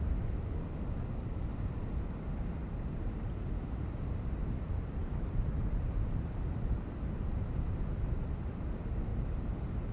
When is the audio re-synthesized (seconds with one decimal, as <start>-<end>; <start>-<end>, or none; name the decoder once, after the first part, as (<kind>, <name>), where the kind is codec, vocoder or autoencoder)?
1.5-2.0 (vocoder, BigVGAN v2); 2.6-3.2; 5.0-7.5; 9.1-9.9